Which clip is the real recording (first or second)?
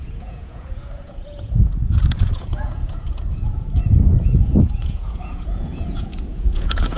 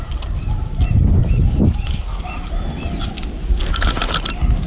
second